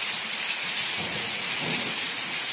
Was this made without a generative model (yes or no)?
no